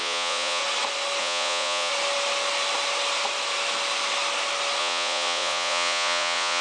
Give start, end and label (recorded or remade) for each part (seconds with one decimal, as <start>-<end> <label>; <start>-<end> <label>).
0.0-0.6 remade; 0.6-1.2 recorded; 1.2-1.9 remade; 1.9-4.8 recorded; 4.8-6.6 remade